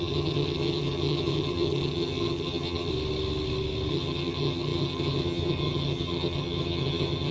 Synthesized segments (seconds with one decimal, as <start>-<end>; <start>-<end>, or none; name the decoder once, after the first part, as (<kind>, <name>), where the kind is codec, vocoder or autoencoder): 0.0-2.9 (vocoder, HiFi-GAN); 3.9-7.3